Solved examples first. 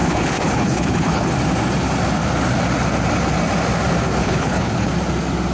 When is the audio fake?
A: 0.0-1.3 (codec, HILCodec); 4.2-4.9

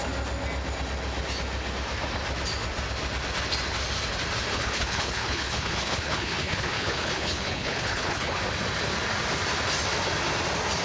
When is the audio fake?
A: 4.5-8.4 (codec, HILCodec)

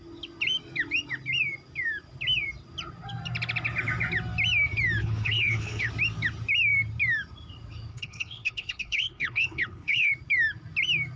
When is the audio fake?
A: 5.0-5.9 (codec, HILCodec); 7.9-10.1